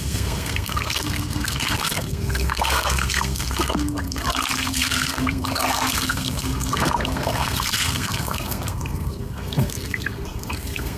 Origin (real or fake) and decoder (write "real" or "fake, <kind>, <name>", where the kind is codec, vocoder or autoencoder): fake, codec, SNAC